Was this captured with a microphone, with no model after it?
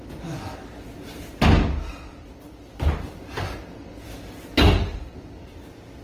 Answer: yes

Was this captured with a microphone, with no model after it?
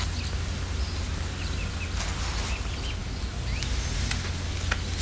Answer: yes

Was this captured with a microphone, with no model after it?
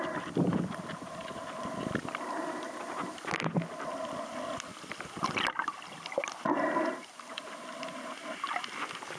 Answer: yes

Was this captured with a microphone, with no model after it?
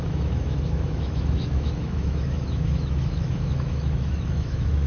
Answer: no